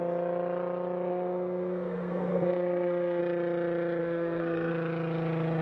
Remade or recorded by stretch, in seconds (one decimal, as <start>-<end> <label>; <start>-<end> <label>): 0.0-1.1 recorded; 1.1-3.2 remade; 3.2-4.0 recorded; 4.0-4.7 remade; 4.7-5.6 recorded